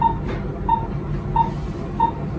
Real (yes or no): yes